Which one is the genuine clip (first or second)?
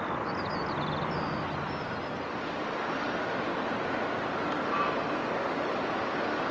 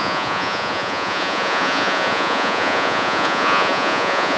first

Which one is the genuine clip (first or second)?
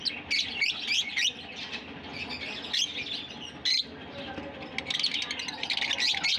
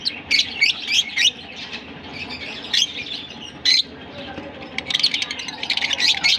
first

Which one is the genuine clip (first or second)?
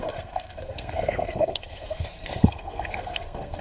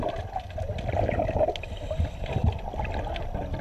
second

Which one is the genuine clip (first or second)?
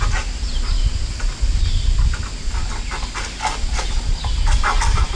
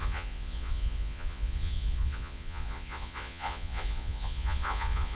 first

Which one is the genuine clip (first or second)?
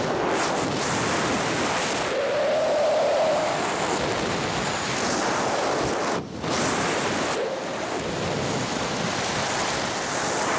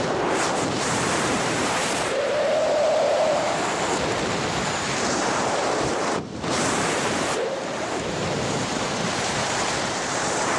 first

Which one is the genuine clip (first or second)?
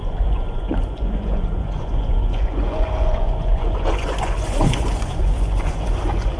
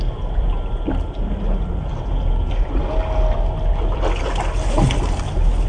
second